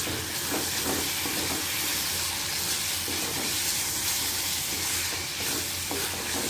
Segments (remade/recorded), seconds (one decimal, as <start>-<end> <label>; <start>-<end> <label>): 0.0-6.5 recorded